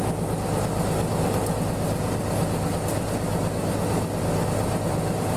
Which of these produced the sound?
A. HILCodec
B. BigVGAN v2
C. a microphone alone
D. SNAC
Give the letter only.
C